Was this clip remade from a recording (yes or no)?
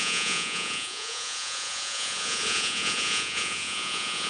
yes